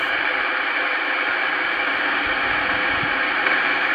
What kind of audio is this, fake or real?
fake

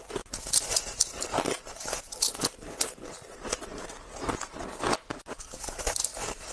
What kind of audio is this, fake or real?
real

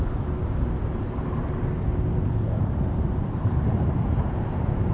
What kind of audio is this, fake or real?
real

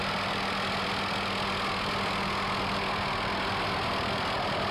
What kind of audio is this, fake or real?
real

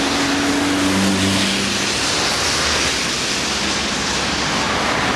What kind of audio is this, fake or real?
real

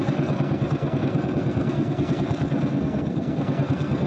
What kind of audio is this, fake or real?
fake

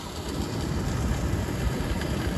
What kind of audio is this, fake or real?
real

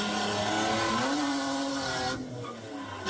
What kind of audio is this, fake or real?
real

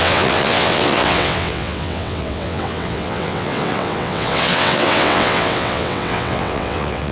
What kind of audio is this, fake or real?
fake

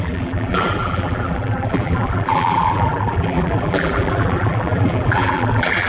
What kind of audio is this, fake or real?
fake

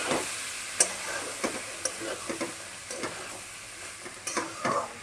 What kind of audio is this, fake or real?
real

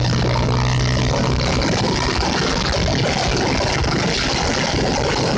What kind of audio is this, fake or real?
real